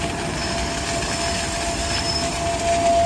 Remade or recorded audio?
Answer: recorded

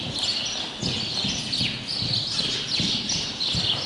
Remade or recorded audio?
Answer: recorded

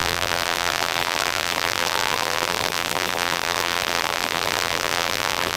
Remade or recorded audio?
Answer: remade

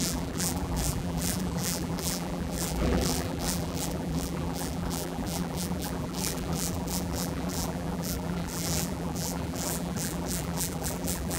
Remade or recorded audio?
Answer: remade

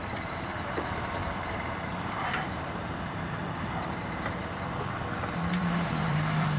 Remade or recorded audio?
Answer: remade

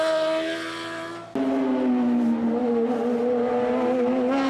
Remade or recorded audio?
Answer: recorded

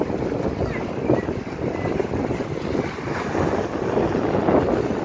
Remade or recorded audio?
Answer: recorded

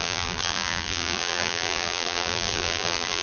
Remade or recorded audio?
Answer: remade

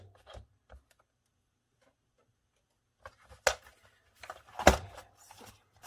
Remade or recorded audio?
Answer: remade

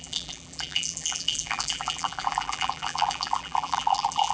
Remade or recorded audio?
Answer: remade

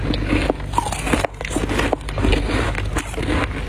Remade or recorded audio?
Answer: recorded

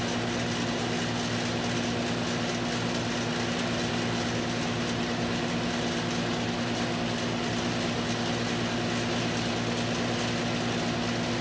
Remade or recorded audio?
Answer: recorded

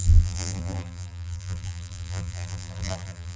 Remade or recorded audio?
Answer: remade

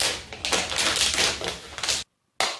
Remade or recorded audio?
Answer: recorded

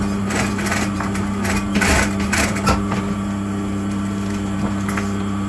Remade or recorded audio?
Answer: recorded